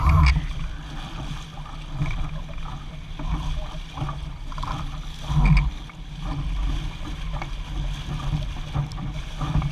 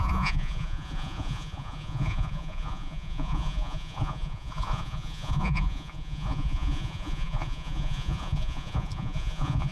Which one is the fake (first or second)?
second